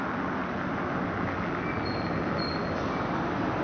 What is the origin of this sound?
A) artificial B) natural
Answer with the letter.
B